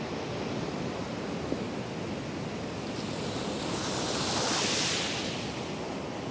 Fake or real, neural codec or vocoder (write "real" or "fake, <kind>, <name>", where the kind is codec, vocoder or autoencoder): real